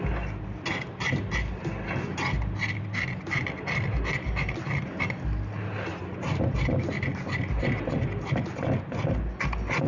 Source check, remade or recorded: recorded